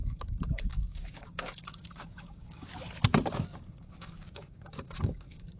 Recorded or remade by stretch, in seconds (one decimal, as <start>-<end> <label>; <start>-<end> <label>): 0.0-2.7 remade; 2.7-3.5 recorded; 3.5-5.6 remade